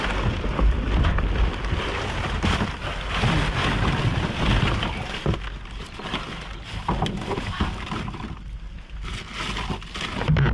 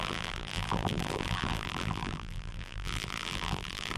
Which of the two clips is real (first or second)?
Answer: first